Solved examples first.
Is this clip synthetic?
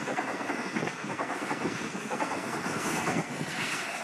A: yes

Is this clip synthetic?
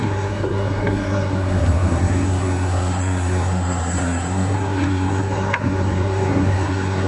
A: yes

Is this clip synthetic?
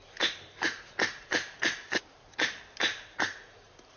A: no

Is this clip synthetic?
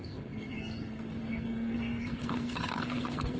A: yes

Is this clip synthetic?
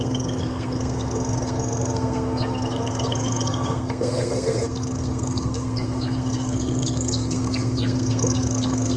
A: yes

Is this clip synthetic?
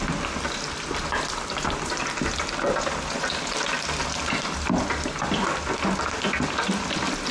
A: no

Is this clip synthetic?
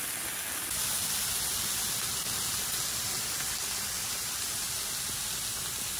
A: no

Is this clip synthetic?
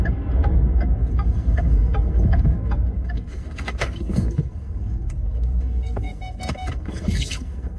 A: yes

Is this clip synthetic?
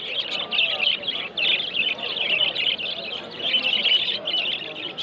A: no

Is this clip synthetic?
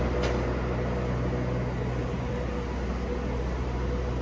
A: no